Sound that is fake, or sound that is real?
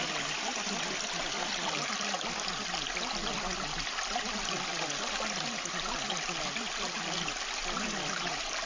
real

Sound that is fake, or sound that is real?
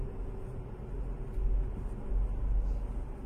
real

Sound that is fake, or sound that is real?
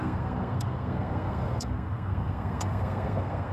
fake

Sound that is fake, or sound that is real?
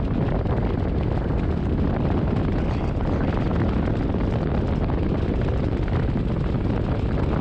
real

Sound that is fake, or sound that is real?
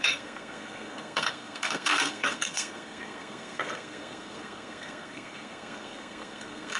fake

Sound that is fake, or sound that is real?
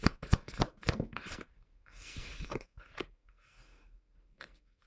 fake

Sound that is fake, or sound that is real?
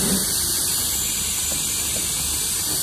real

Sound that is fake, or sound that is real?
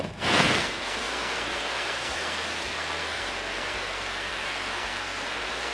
fake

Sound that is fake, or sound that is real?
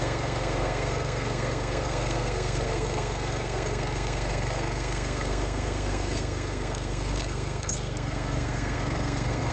fake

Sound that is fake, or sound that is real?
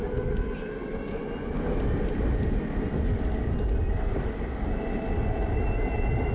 real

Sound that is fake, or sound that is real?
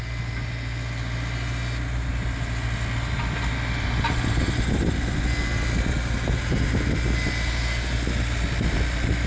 real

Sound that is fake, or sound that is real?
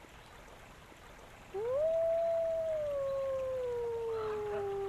real